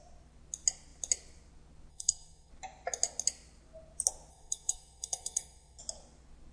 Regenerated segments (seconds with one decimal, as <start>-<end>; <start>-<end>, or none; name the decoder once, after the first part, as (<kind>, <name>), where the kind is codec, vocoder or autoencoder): 1.9-2.5 (codec, SNAC); 4.3-5.8